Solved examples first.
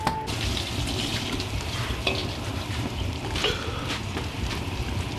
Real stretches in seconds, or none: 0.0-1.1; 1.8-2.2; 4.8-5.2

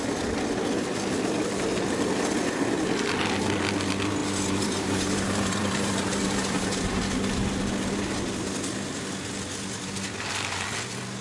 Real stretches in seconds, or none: 0.0-4.2; 7.0-11.2

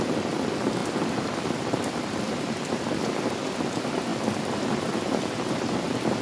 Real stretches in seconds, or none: 0.0-6.2

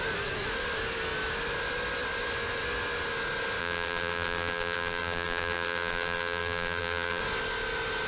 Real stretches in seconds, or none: 0.0-3.6; 7.2-8.1